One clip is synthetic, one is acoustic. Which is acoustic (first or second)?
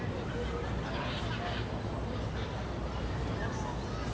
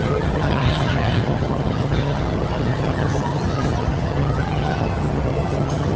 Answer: first